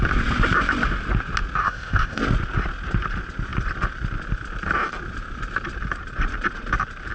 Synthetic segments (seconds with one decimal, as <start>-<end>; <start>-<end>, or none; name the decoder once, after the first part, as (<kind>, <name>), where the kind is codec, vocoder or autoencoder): 1.6-2.2 (codec, ZipCodec)

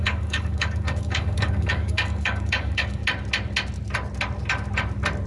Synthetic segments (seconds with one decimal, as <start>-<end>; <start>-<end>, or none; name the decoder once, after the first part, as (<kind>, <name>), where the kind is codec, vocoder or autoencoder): 0.0-3.0 (codec, DAC)

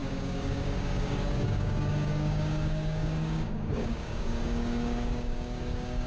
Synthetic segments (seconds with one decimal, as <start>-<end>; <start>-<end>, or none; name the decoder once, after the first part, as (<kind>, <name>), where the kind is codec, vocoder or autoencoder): 0.0-6.1 (codec, DAC)

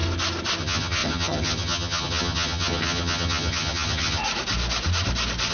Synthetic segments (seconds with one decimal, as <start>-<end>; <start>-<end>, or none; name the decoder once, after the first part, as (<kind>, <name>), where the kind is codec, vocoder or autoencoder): 0.6-4.2 (vocoder, HiFi-GAN)

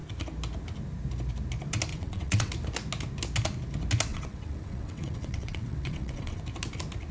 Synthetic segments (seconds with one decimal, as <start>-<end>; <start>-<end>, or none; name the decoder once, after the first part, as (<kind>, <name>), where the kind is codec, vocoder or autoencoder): 1.9-2.5 (vocoder, WaveNeXt); 4.1-6.4

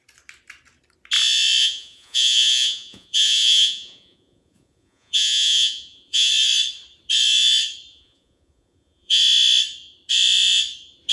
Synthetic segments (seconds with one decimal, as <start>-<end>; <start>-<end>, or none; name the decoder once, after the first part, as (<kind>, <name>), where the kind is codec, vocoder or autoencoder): 1.6-6.3 (vocoder, Vocos); 7.9-9.2